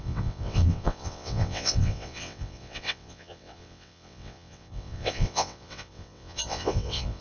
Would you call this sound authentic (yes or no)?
no